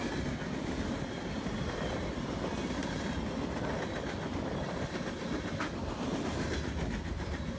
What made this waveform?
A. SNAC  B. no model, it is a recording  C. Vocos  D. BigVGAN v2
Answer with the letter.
B